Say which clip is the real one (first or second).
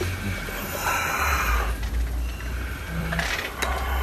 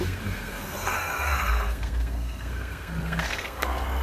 first